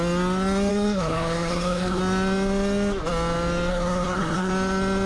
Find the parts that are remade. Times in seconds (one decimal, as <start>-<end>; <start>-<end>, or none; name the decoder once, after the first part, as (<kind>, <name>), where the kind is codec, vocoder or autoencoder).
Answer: 0.7-2.0 (codec, SNAC); 3.7-4.5